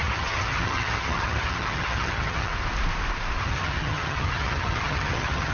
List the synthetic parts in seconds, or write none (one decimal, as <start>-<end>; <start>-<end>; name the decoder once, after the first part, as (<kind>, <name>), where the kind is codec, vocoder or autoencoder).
0.0-2.5 (vocoder, HiFi-GAN); 3.4-5.5